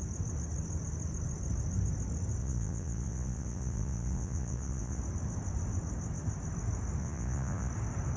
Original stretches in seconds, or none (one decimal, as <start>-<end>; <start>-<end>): 0.0-2.4; 5.0-7.0; 7.7-8.2